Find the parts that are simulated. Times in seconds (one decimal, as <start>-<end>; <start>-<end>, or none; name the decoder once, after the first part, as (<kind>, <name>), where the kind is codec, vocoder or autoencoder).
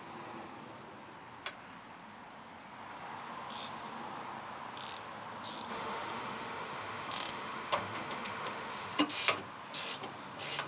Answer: 5.7-9.0 (autoencoder, DAC-VAE)